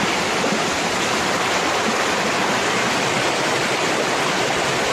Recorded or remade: remade